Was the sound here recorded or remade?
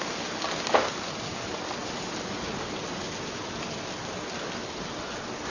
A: recorded